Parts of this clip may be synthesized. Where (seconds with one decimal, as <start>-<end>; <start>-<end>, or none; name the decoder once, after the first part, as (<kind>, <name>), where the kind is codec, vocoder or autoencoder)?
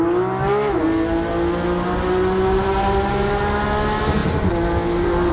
none